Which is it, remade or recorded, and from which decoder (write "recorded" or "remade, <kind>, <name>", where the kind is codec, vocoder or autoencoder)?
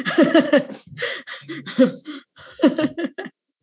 remade, autoencoder, DAC-VAE